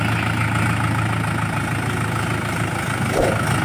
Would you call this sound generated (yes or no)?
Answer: no